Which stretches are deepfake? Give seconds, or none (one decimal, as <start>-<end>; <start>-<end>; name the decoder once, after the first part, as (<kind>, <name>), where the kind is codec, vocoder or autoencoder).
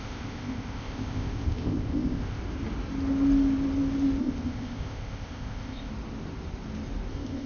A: 0.0-2.4 (codec, ZipCodec); 4.2-5.9; 7.1-7.5